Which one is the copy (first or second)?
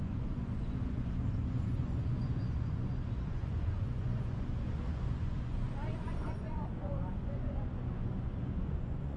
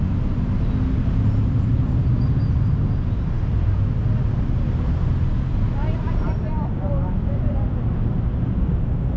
first